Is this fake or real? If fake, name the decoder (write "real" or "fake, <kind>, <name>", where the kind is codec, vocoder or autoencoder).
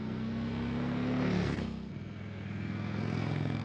fake, codec, SNAC